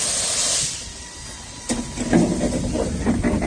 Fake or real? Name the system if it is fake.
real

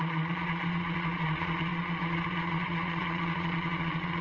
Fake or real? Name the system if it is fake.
fake, vocoder, Vocos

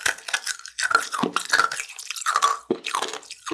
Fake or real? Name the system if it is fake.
real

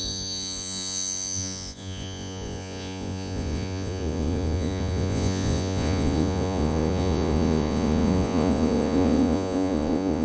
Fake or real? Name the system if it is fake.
fake, vocoder, Vocos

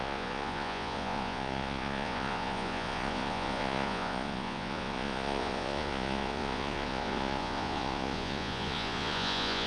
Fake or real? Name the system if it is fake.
fake, vocoder, Vocos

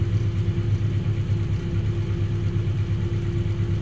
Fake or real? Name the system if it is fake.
real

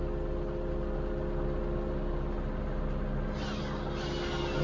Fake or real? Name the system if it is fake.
real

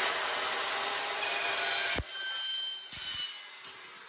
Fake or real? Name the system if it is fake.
real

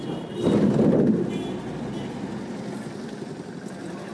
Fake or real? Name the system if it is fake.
real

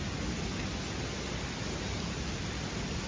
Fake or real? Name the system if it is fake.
real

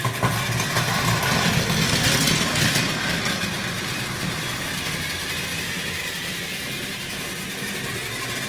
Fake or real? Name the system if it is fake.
real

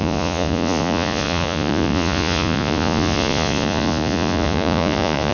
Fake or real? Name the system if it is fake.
fake, vocoder, Vocos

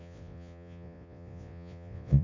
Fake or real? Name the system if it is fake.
fake, vocoder, Vocos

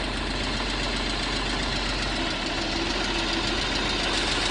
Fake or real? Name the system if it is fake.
real